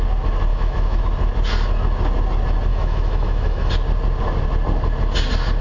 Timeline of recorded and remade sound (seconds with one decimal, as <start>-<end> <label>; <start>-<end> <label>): 0.0-0.5 recorded; 0.5-1.0 remade; 1.0-2.7 recorded; 2.7-3.7 remade; 3.7-5.6 recorded